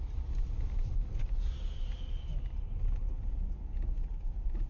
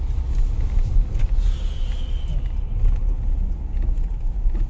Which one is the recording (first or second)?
second